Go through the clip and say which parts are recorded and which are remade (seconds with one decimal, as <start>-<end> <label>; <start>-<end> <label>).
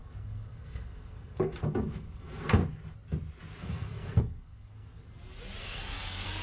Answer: 0.0-2.6 remade; 2.6-3.6 recorded; 3.6-4.9 remade; 4.9-5.6 recorded; 5.6-6.4 remade